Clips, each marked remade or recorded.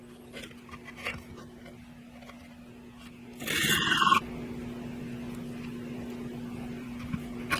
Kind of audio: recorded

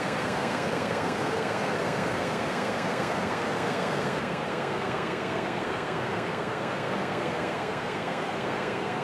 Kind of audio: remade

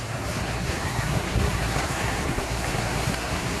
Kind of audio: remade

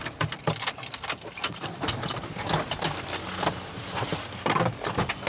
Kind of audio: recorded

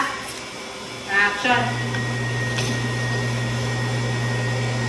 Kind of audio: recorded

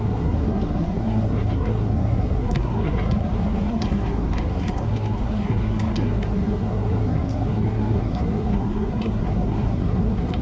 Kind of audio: remade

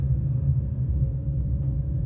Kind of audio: remade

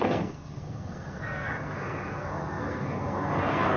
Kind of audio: remade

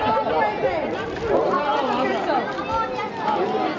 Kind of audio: recorded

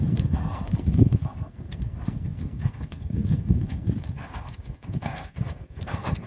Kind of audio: remade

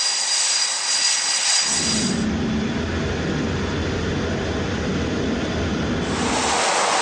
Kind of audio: recorded